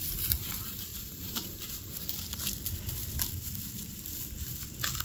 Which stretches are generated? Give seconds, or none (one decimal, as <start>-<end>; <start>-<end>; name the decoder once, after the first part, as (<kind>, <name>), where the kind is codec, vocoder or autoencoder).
0.9-1.6 (vocoder, BigVGAN v2)

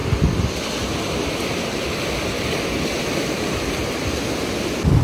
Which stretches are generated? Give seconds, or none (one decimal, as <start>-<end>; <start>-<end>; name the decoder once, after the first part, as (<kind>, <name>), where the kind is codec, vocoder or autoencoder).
none